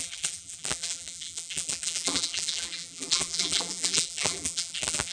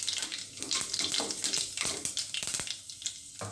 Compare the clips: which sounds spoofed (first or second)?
first